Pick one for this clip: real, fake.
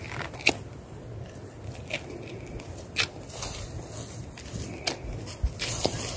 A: real